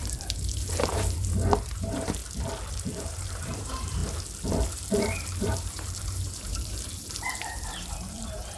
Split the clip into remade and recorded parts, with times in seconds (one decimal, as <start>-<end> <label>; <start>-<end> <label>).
0.0-2.2 remade; 2.2-2.7 recorded; 2.7-4.0 remade; 4.0-4.7 recorded; 4.7-8.6 remade